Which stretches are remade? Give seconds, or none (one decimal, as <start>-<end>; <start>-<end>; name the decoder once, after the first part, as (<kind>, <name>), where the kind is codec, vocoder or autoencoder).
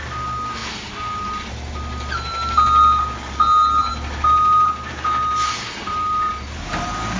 none